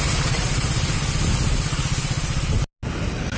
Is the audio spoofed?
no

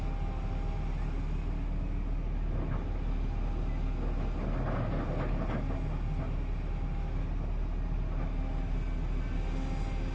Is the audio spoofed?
no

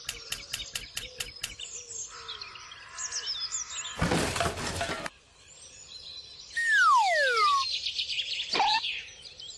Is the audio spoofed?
no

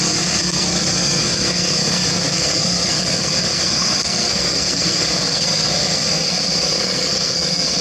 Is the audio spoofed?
yes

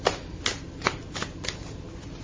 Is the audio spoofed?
no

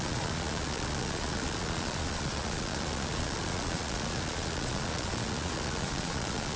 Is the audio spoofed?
yes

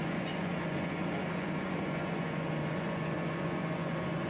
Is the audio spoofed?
yes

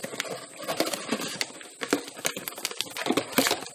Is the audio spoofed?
no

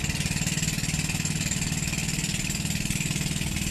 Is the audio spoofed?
no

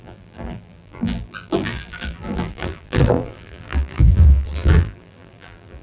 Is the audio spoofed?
yes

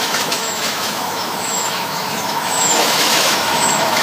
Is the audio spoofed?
yes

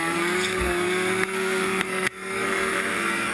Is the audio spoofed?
yes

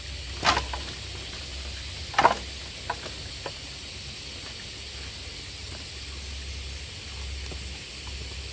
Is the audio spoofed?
no